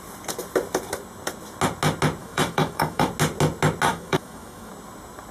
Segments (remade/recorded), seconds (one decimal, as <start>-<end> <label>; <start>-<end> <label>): 0.0-2.2 recorded; 2.2-3.1 remade; 3.1-3.9 recorded; 3.9-4.7 remade; 4.7-5.3 recorded